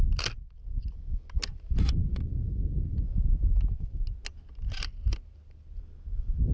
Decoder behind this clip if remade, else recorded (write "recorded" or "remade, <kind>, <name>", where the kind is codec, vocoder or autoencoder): recorded